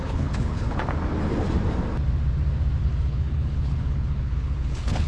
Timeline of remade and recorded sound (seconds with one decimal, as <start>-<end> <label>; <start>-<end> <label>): 0.0-0.8 remade; 0.8-2.8 recorded; 2.8-5.1 remade